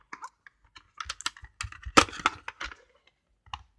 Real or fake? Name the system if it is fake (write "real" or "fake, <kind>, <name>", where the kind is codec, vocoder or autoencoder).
real